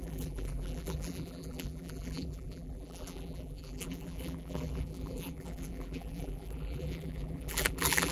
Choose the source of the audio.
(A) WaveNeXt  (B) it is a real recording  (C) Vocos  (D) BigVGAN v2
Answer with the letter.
D